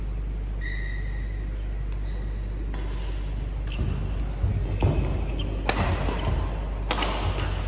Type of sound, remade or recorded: recorded